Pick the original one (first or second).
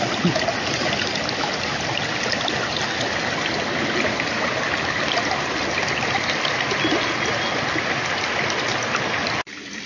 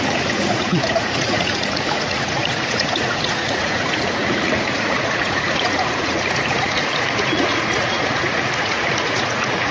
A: first